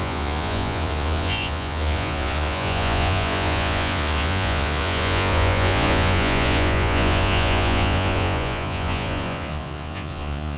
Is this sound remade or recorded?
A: remade